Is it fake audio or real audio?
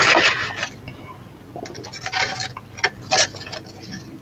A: real